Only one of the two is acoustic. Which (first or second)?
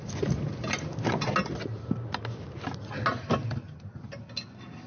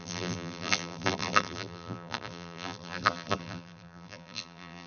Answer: first